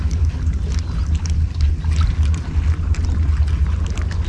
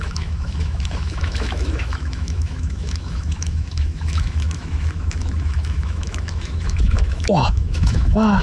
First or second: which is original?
first